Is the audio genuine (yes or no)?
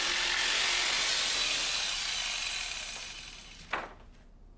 yes